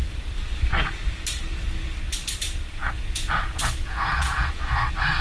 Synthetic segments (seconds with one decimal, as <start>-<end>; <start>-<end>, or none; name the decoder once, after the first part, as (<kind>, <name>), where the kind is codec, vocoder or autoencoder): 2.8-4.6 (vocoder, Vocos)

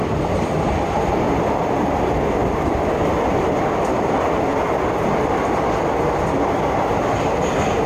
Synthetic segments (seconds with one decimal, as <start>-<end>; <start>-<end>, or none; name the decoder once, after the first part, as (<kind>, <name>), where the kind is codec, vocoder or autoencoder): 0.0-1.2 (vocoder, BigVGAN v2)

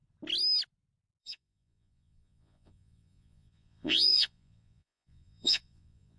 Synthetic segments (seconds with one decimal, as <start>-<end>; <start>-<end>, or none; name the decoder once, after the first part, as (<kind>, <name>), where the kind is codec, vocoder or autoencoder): 1.2-6.2 (vocoder, Vocos)